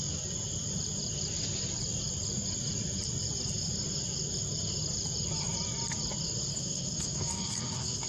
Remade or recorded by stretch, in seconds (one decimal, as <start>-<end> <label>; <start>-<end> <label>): 0.0-6.5 recorded; 6.5-8.1 remade